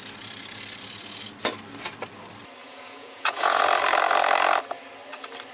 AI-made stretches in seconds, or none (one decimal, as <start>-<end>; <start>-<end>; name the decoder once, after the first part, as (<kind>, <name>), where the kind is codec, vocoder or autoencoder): 2.6-3.6 (vocoder, Vocos)